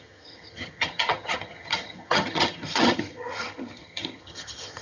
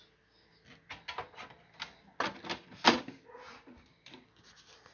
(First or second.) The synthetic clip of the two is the first